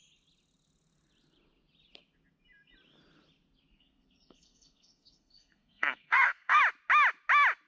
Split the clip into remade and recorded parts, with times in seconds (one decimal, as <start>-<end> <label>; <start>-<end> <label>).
0.0-3.7 recorded; 3.7-6.6 remade; 6.6-7.7 recorded

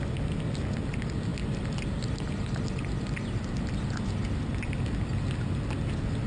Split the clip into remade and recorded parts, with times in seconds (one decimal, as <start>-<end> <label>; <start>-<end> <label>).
0.0-6.3 recorded

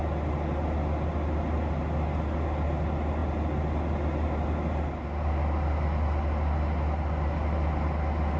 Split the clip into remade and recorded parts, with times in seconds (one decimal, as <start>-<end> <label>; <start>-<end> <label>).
0.0-8.4 recorded

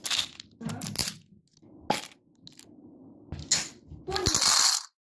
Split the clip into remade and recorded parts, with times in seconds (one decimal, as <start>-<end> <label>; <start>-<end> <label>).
0.0-5.0 recorded

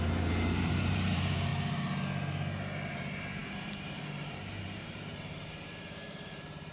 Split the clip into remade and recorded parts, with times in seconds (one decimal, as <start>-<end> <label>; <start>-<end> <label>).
0.0-1.5 remade; 1.5-2.9 recorded; 2.9-6.7 remade

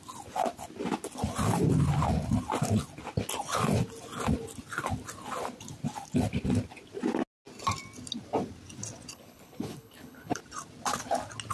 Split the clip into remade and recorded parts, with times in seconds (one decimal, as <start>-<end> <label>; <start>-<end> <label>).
0.0-9.1 recorded; 9.1-10.4 remade; 10.4-11.5 recorded